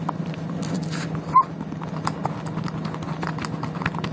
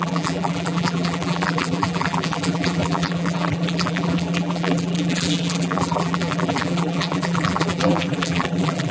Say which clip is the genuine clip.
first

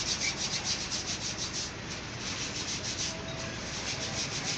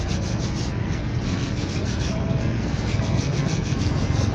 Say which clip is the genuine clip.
first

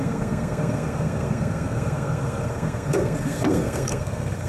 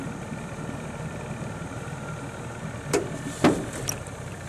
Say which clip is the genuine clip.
second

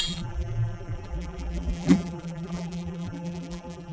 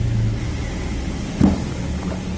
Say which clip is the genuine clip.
second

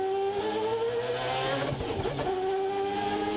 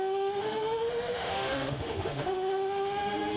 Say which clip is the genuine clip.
first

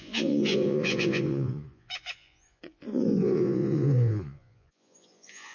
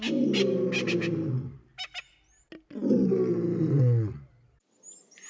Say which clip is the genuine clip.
second